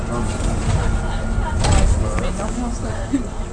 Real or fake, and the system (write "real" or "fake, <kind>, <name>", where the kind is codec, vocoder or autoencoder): real